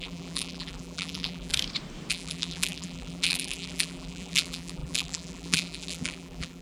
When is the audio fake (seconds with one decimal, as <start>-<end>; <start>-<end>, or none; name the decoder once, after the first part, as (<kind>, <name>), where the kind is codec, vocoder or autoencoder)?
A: 0.0-1.5 (vocoder, BigVGAN v2); 2.1-6.6